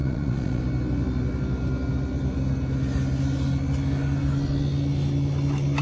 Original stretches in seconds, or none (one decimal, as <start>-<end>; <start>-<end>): 0.6-5.8